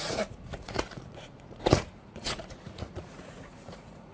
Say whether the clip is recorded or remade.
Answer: remade